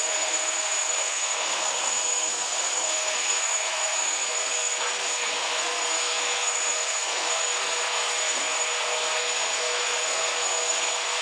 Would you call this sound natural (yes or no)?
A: no